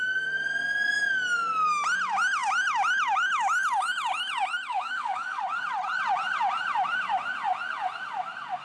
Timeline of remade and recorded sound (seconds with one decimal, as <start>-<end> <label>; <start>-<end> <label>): 0.0-4.7 recorded; 4.7-5.4 remade; 5.4-8.6 recorded